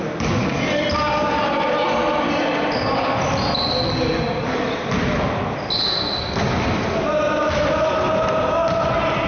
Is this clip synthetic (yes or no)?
no